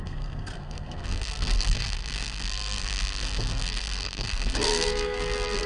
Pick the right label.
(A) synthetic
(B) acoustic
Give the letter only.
A